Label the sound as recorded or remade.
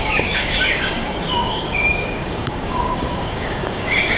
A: remade